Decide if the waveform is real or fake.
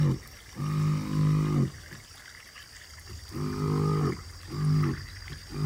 real